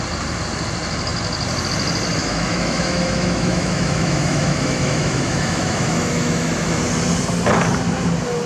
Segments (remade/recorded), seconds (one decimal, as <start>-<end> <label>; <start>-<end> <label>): 0.0-2.2 recorded; 2.2-6.8 remade; 6.8-8.5 recorded